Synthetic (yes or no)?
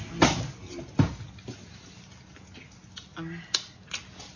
no